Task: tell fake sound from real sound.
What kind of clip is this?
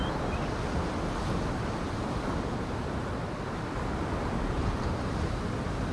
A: real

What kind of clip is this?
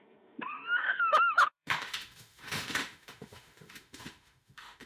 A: fake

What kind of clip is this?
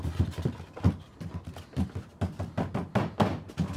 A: real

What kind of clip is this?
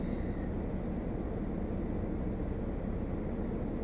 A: real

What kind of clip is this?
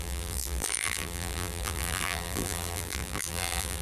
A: fake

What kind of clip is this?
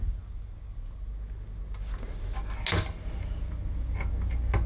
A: real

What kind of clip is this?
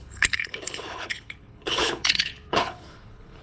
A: fake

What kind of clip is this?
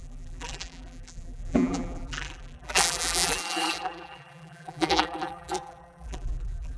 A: fake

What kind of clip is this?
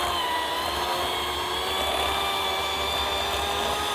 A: fake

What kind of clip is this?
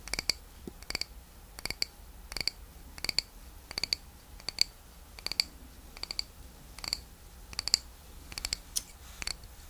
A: real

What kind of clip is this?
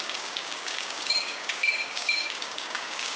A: fake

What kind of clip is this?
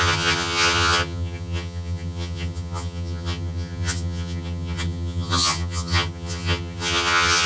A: fake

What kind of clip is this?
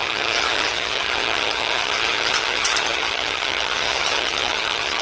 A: fake